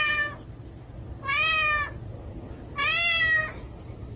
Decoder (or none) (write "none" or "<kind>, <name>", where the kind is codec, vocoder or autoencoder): none